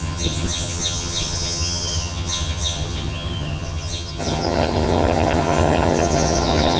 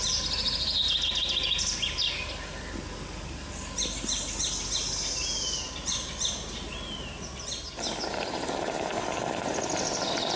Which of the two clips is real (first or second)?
second